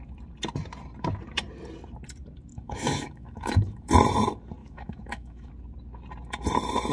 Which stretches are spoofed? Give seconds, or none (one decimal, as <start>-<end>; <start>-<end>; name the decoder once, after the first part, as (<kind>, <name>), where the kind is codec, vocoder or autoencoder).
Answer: 2.5-3.9 (autoencoder, DAC-VAE); 4.6-5.5